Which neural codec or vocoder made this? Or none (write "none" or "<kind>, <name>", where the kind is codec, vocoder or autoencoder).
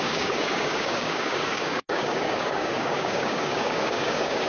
codec, DAC